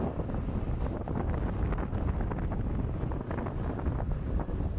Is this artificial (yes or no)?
no